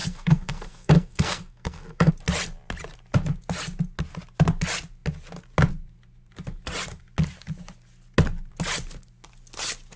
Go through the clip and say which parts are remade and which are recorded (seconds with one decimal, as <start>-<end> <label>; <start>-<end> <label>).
0.0-2.1 remade; 2.1-10.0 recorded